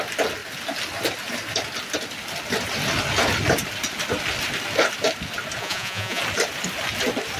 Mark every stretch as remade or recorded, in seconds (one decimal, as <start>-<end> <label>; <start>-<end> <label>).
0.0-5.6 recorded; 5.6-6.2 remade; 6.2-7.4 recorded